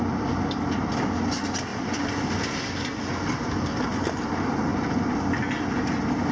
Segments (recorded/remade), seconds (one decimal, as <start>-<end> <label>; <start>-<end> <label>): 0.0-1.7 recorded; 1.7-2.4 remade; 2.4-6.3 recorded